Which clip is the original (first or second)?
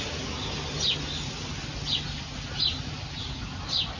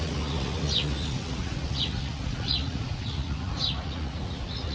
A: first